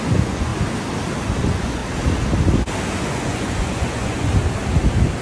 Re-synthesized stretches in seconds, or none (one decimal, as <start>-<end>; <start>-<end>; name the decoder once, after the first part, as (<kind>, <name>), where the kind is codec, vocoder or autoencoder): 0.0-0.5 (vocoder, Vocos); 1.4-1.8; 3.0-4.3

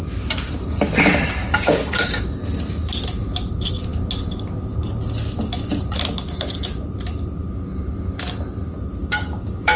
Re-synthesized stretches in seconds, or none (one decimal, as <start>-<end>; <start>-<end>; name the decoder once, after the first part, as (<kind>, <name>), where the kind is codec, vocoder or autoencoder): 1.5-2.4 (codec, DAC); 9.0-9.8